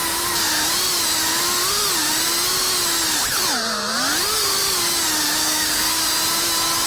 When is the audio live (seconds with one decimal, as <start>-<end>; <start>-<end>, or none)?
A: 0.0-5.4; 6.0-6.9